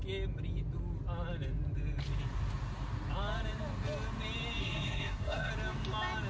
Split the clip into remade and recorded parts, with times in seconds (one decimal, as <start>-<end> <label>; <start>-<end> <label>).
0.0-4.6 recorded; 4.6-5.5 remade; 5.5-6.3 recorded